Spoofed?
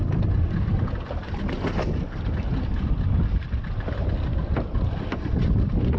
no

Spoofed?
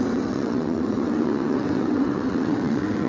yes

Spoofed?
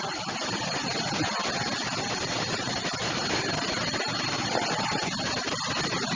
no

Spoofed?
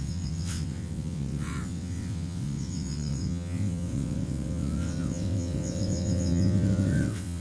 yes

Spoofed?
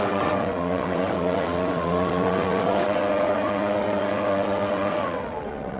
yes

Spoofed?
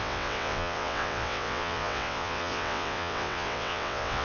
yes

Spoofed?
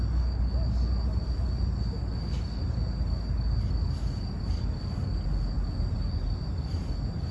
no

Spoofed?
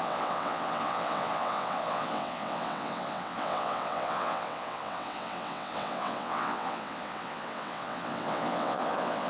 yes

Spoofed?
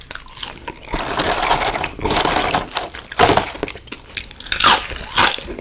no